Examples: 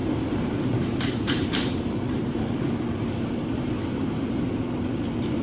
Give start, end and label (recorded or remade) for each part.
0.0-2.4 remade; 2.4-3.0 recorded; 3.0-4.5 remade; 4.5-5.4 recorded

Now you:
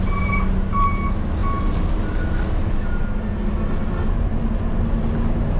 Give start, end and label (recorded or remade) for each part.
0.0-5.6 recorded

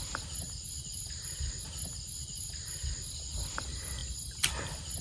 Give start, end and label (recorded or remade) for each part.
0.0-5.0 recorded

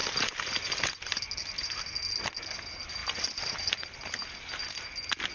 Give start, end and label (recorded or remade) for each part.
0.0-5.3 recorded

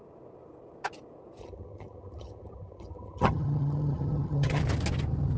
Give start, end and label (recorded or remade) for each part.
0.0-1.4 recorded; 1.4-4.6 remade; 4.6-5.4 recorded

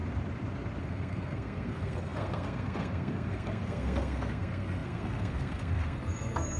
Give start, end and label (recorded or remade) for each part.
0.0-0.8 recorded; 0.8-6.6 remade

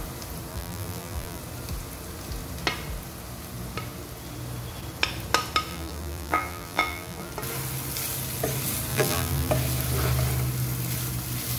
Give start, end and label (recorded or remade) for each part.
0.0-0.5 recorded; 0.5-1.4 remade; 1.4-5.7 recorded; 5.7-7.3 remade; 7.3-8.9 recorded; 8.9-9.5 remade; 9.5-11.6 recorded